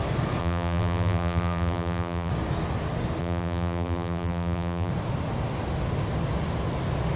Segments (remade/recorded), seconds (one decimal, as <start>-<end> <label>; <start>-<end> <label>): 0.0-0.4 recorded; 0.4-2.3 remade; 2.3-3.2 recorded; 3.2-4.9 remade; 4.9-7.2 recorded